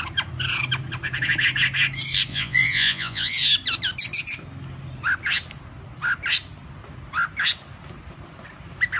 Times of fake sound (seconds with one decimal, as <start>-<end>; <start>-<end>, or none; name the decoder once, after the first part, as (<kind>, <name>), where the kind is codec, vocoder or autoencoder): 2.3-3.3 (vocoder, Vocos)